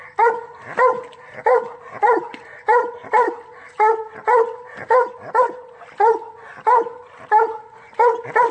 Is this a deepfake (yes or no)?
no